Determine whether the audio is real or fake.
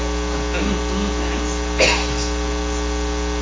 real